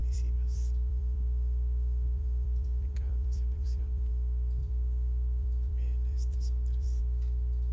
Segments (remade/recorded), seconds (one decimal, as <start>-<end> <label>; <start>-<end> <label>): 0.0-4.1 remade; 4.1-4.6 recorded; 4.6-7.0 remade; 7.0-7.7 recorded